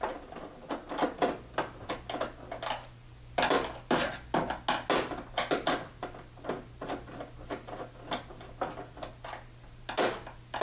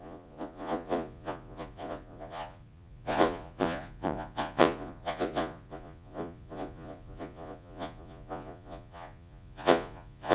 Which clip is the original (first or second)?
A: first